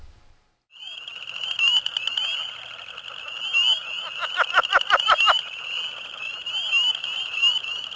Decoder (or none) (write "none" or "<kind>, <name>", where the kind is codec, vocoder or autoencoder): none